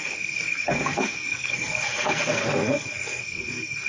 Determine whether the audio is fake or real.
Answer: fake